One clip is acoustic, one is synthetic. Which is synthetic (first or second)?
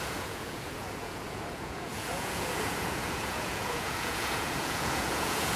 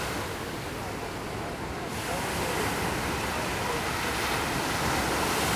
first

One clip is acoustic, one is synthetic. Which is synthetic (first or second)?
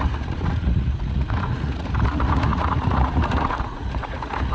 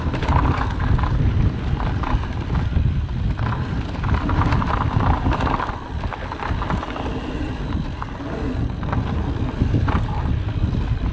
first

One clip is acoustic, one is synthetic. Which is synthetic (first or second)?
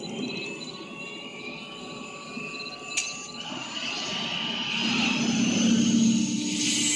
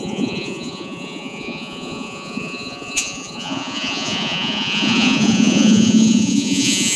second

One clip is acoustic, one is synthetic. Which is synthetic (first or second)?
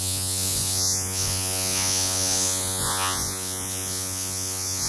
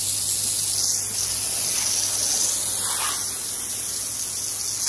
first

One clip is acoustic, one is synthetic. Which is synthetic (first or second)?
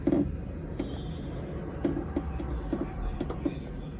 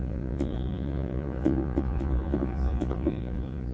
second